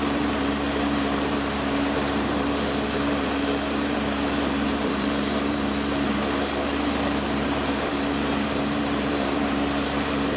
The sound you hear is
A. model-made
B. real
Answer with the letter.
A